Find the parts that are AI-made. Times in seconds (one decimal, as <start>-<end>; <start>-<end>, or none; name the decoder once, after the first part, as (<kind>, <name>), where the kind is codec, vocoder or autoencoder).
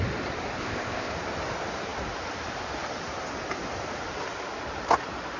0.6-1.1 (codec, ZipCodec)